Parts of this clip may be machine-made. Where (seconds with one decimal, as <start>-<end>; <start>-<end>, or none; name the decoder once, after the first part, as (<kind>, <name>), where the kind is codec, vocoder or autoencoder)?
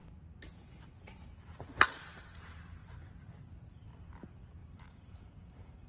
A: 2.1-3.1 (vocoder, BigVGAN v2); 4.6-5.9